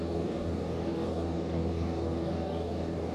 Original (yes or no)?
no